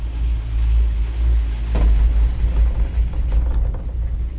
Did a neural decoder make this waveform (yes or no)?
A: no